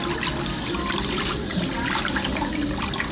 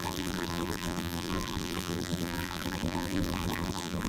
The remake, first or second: second